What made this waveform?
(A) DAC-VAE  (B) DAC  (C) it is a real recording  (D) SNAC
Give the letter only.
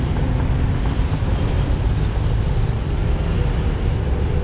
C